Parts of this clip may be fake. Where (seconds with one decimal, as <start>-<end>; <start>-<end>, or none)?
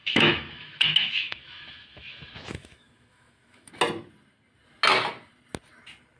0.0-3.7